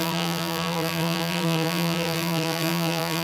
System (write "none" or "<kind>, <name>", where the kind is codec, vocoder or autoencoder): vocoder, BigVGAN v2